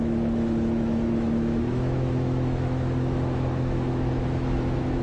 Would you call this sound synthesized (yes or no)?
yes